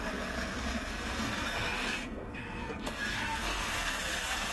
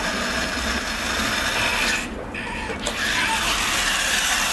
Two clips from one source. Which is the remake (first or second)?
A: first